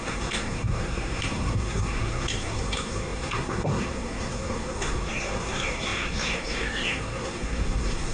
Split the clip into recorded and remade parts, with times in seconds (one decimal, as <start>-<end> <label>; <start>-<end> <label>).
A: 0.0-8.1 remade